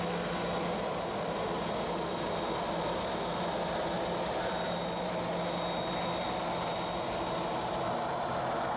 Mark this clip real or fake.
real